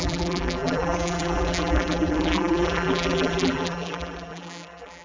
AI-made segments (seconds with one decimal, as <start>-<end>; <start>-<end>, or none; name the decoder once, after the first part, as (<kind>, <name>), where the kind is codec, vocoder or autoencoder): 0.0-5.0 (vocoder, BigVGAN v2)